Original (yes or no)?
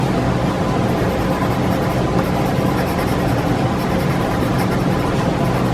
yes